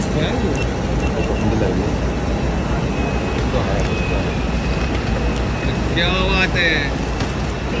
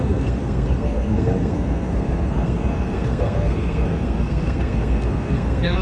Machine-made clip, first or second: second